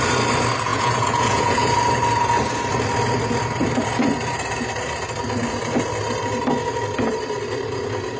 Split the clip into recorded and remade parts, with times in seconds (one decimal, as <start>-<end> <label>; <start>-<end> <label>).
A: 0.0-0.7 recorded; 0.7-1.7 remade; 1.7-8.2 recorded